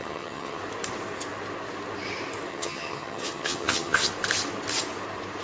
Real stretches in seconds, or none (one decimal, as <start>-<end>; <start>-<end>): 0.6-2.5; 4.1-5.4